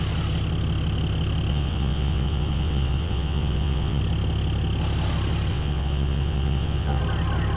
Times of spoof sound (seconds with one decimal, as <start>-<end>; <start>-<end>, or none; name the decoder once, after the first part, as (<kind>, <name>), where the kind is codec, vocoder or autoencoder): 1.5-4.0 (vocoder, WaveNeXt); 5.5-7.0